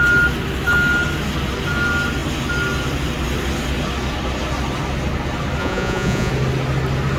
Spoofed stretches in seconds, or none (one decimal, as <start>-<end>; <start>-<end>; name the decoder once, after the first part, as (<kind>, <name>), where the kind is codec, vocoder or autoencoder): 5.6-6.3 (vocoder, Vocos)